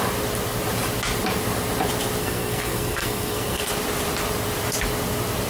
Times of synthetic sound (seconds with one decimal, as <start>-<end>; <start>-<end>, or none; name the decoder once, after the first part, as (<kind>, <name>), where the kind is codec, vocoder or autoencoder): 2.2-3.7 (codec, SNAC)